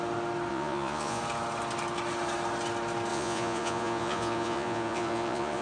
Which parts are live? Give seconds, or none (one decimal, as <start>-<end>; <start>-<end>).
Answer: 0.0-0.5; 1.2-3.1